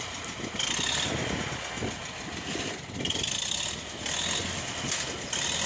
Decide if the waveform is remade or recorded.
recorded